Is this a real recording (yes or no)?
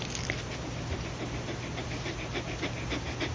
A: yes